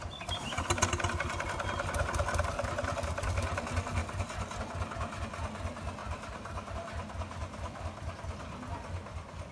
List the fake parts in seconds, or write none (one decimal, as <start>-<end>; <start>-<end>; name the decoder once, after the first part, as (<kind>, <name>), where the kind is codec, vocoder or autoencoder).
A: 4.0-4.6 (vocoder, BigVGAN v2); 6.0-6.7

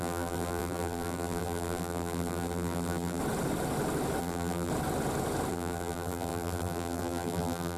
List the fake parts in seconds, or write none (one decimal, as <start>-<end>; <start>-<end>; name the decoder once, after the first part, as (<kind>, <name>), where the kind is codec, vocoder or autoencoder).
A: 0.0-3.2 (vocoder, BigVGAN v2); 4.2-4.7; 5.5-7.8